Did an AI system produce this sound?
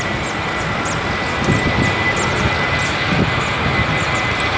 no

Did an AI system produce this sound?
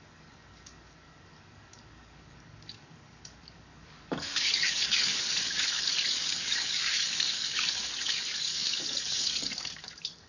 yes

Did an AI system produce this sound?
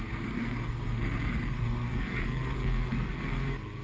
yes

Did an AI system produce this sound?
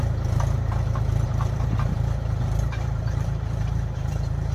yes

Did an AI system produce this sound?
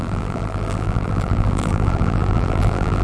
yes